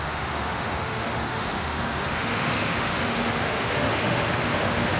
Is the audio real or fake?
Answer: fake